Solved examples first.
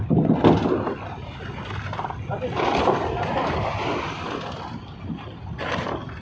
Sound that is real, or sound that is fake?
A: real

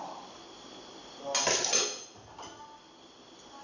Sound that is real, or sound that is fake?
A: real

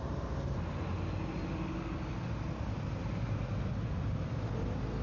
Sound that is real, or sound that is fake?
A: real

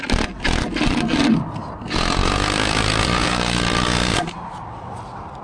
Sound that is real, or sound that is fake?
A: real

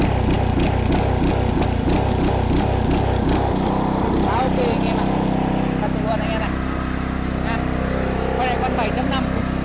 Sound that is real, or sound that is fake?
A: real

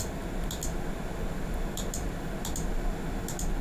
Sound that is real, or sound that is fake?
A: real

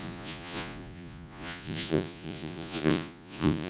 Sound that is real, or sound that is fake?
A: fake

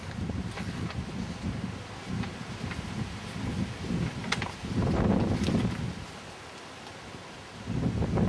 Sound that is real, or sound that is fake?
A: real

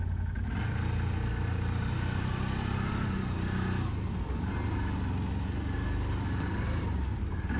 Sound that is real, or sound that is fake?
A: real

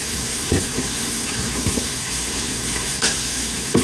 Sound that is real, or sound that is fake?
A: fake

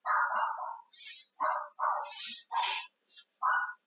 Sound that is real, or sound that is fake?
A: fake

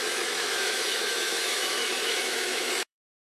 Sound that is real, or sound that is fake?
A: fake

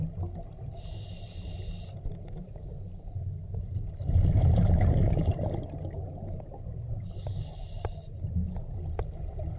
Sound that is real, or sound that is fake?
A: real